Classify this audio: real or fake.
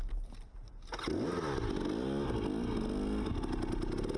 real